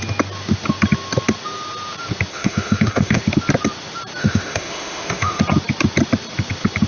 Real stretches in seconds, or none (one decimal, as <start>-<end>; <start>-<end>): 0.0-2.3; 3.2-4.2; 5.4-6.9